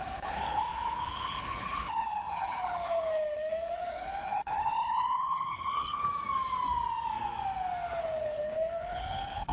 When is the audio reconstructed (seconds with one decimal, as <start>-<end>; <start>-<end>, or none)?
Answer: 0.0-6.0; 8.0-9.5